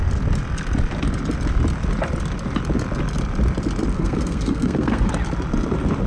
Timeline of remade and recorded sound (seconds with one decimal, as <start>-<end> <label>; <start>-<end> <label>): 0.0-3.9 recorded; 3.9-5.1 remade; 5.1-6.1 recorded